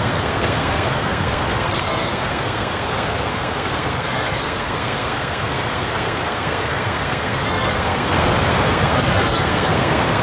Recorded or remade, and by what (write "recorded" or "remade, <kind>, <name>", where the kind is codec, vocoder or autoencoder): remade, codec, SNAC